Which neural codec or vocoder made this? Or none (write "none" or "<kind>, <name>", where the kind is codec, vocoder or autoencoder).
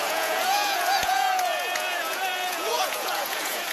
vocoder, Vocos